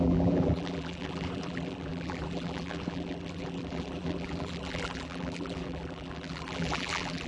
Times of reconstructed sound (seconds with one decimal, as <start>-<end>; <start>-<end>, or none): 0.0-7.3